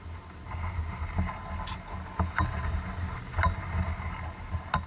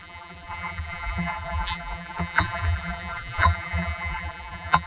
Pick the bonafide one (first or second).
first